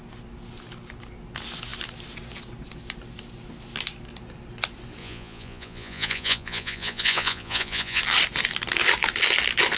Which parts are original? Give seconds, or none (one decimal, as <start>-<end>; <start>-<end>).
0.0-5.0; 8.0-9.8